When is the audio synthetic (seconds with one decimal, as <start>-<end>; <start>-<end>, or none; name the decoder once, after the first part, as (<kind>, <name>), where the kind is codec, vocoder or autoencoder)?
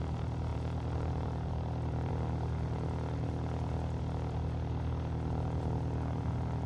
0.5-2.1 (vocoder, BigVGAN v2)